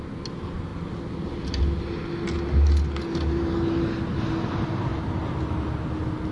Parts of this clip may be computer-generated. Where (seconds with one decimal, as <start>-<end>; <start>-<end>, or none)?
none